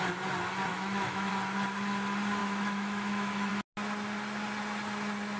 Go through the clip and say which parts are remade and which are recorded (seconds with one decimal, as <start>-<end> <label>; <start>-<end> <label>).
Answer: 0.0-0.7 recorded; 0.7-1.3 remade; 1.3-2.4 recorded; 2.4-3.5 remade; 3.5-5.4 recorded